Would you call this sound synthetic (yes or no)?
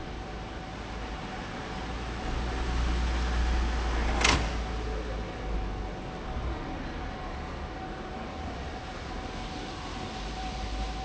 no